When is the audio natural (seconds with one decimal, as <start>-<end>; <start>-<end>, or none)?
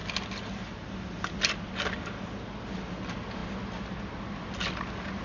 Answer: 0.0-5.2